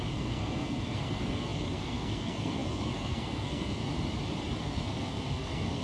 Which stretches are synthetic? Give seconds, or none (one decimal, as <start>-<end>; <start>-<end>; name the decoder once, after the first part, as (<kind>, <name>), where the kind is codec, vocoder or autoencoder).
0.0-3.8 (codec, SNAC); 4.6-5.8